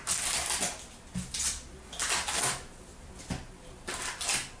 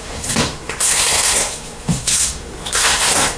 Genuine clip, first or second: first